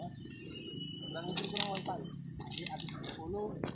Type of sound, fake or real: real